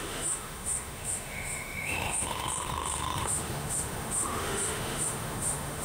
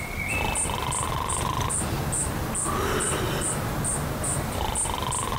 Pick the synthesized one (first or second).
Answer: first